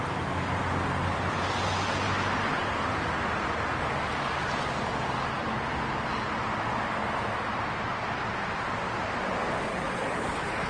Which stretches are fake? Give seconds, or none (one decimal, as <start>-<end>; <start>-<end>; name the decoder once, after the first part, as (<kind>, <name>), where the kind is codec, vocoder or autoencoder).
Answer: 9.7-10.7 (codec, HILCodec)